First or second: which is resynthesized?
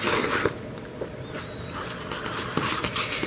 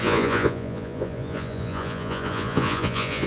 second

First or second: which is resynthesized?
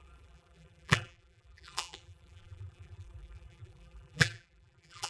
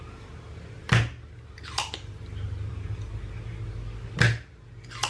first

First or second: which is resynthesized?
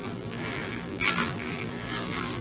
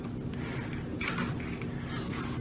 first